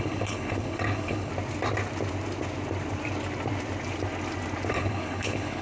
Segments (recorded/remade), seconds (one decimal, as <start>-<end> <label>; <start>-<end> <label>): 0.0-1.3 remade; 1.3-4.7 recorded; 4.7-5.6 remade